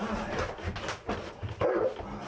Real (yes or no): yes